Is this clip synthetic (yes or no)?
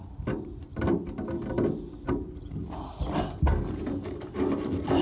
no